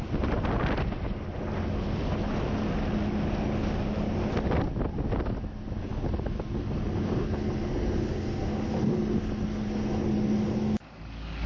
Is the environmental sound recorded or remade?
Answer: recorded